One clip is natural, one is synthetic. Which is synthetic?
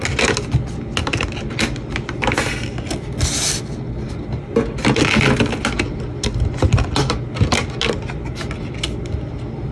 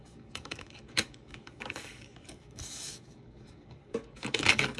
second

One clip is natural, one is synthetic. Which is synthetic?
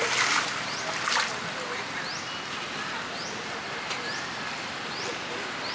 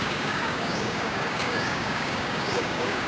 second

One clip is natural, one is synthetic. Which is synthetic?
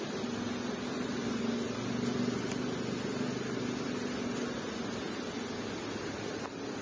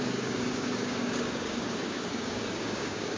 second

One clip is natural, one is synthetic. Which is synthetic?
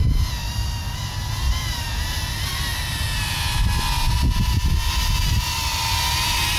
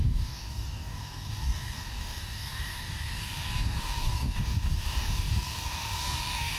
second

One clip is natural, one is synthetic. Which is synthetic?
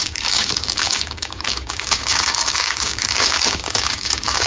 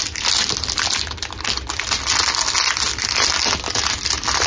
first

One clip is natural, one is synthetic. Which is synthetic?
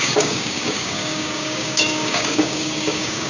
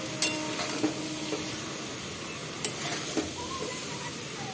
first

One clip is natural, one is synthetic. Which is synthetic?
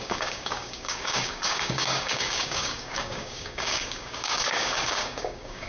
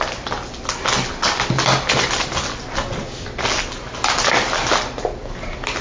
first